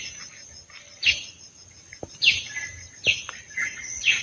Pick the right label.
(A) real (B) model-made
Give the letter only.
A